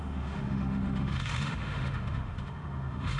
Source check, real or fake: fake